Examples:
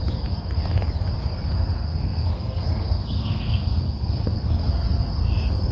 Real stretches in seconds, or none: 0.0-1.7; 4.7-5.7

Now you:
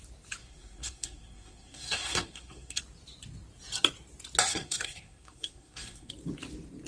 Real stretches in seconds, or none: 0.0-0.4; 2.8-4.5; 6.1-6.9